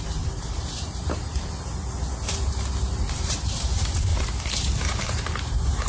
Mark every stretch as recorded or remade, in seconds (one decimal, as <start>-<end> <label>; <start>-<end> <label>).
0.0-1.3 remade; 1.3-2.8 recorded; 2.8-5.9 remade